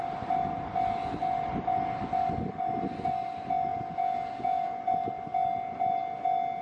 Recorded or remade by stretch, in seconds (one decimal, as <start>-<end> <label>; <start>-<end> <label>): 0.0-3.7 recorded; 3.7-4.8 remade; 4.8-6.6 recorded